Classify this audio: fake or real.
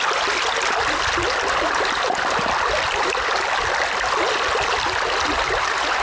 real